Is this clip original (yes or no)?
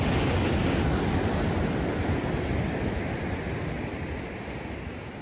yes